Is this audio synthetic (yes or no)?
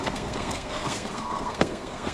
yes